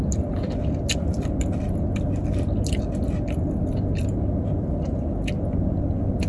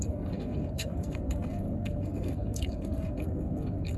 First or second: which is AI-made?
second